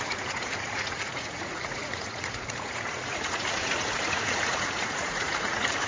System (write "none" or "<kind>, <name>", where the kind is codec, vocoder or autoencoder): vocoder, Vocos